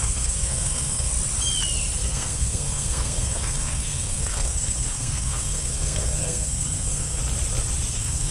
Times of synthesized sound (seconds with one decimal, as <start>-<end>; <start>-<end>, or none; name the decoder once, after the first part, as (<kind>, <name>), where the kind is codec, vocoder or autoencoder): 0.0-1.1 (codec, SNAC); 2.0-7.2; 7.9-8.3